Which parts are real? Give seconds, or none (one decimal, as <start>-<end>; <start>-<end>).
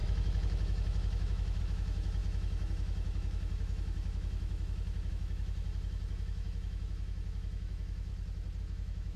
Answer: 8.1-8.6